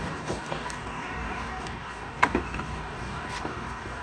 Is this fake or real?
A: fake